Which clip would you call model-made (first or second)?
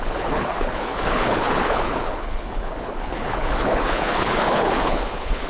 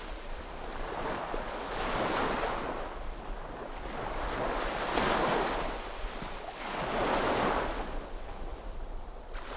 first